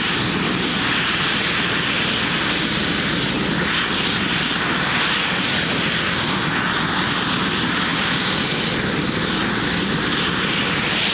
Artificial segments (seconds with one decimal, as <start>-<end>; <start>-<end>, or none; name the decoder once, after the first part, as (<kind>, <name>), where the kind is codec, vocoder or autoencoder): none